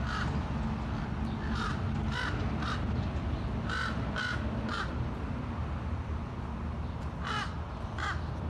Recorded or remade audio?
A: recorded